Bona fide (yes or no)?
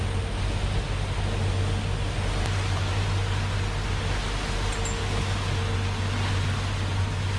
yes